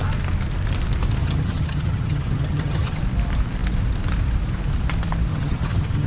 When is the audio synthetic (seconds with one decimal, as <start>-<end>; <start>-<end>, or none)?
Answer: 1.2-3.0; 5.3-6.1